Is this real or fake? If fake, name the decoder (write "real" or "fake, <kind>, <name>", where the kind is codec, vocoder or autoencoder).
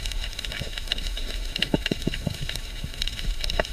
fake, autoencoder, DAC-VAE